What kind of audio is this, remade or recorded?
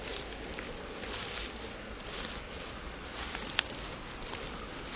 recorded